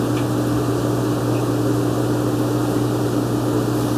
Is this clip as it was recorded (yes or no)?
yes